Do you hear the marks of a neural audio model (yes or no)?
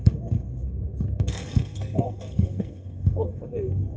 yes